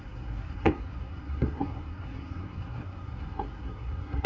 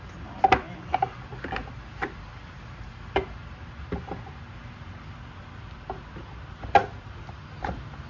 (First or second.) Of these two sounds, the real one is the second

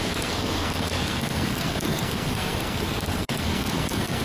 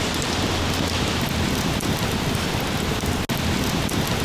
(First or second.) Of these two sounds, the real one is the second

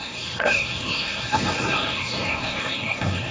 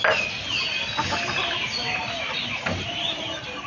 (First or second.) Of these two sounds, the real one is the second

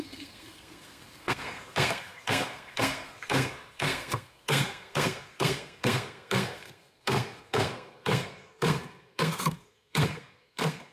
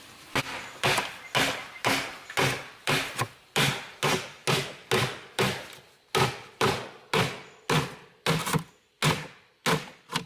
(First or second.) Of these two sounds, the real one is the second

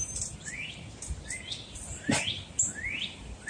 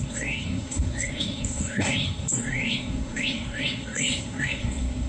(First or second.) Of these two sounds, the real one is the first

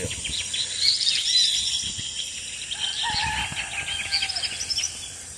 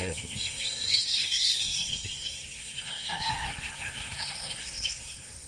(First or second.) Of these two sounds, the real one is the first